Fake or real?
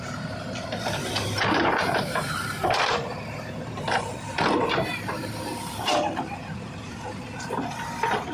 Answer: fake